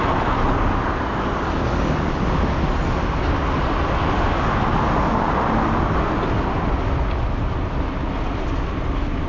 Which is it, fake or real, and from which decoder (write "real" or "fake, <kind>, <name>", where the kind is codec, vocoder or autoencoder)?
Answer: real